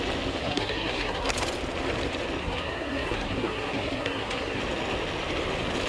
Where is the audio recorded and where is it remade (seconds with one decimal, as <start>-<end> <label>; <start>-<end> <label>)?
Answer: 0.0-0.4 recorded; 0.4-1.3 remade; 1.3-2.4 recorded; 2.4-4.6 remade; 4.6-5.9 recorded